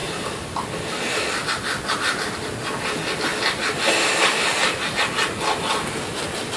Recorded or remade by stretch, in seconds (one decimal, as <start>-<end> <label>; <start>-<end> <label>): 0.0-6.6 recorded